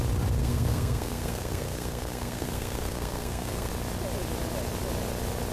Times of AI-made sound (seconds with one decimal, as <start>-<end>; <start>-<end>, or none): 0.4-3.7